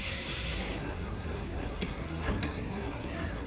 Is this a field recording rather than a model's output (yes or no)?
no